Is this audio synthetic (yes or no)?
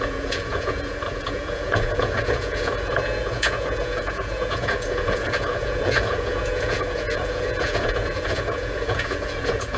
yes